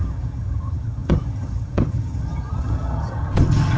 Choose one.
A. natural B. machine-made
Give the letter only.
B